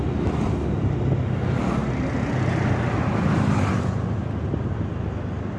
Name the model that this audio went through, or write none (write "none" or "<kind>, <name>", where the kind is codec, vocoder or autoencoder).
none